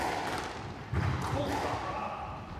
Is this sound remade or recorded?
recorded